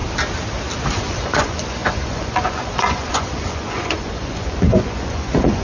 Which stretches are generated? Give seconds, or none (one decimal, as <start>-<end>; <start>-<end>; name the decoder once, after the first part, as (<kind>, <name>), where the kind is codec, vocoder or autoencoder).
1.0-5.6 (vocoder, Vocos)